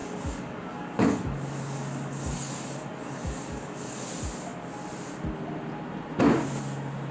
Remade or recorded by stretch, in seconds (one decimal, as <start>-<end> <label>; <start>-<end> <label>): 0.0-4.1 remade; 4.1-7.1 recorded